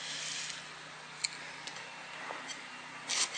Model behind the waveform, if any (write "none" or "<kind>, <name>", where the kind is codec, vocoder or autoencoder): none